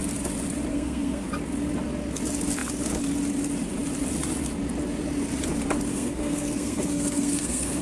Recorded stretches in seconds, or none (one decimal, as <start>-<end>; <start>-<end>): 0.0-0.7; 1.3-5.9